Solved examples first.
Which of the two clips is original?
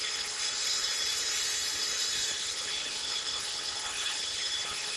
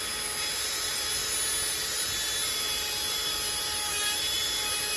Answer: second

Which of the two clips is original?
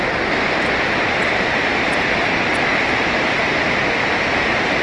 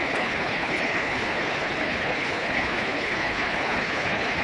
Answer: first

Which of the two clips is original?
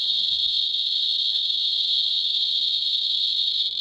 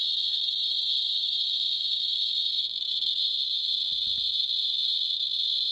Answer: first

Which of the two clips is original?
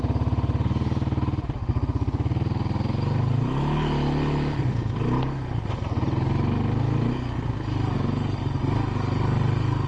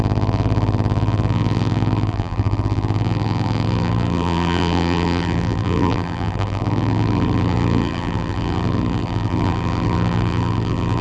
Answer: first